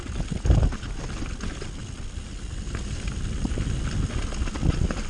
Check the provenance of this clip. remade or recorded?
recorded